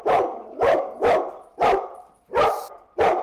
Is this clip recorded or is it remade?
remade